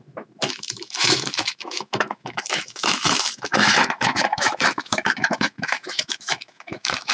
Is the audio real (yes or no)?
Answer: no